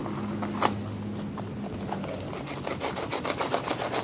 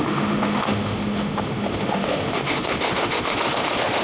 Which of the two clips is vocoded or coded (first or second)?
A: second